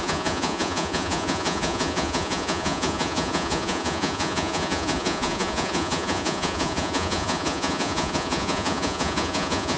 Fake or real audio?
fake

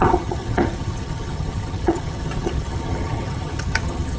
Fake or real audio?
fake